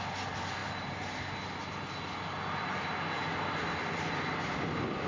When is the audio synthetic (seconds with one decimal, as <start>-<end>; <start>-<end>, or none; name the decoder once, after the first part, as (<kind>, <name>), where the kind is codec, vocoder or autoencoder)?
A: none